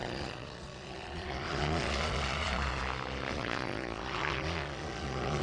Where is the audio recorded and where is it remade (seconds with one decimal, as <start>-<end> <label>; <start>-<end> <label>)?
0.0-2.8 remade; 2.8-3.3 recorded; 3.3-5.4 remade